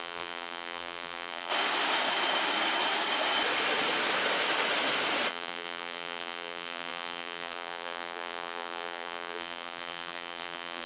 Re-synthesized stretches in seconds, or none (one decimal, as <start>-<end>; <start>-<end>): 0.0-1.5; 5.3-10.9